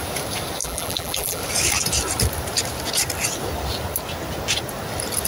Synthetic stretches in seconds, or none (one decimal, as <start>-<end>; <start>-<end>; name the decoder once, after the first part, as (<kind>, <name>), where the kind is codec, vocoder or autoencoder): 0.6-1.4 (vocoder, BigVGAN v2)